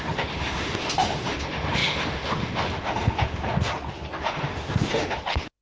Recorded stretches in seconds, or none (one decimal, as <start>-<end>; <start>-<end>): 3.7-4.2